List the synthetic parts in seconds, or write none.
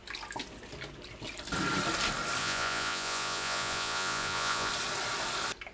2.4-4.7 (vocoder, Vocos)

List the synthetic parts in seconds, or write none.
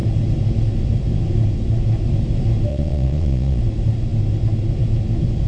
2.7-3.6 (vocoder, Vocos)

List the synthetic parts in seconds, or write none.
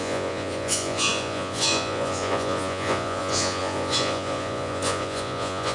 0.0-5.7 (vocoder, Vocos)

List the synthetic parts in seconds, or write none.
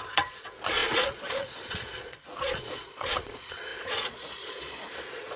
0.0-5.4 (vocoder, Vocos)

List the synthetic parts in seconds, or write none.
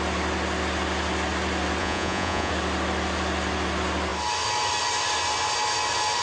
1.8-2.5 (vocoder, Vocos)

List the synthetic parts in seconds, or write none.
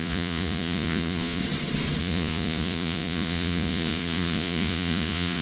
0.0-1.4 (vocoder, Vocos); 2.0-5.4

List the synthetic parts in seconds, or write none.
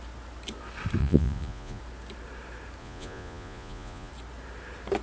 1.0-1.8 (vocoder, Vocos); 2.8-4.1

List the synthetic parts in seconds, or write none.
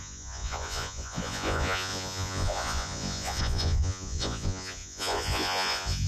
0.0-6.1 (vocoder, Vocos)